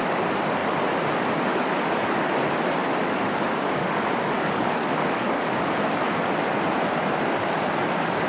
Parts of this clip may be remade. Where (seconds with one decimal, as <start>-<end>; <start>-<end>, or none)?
2.9-5.6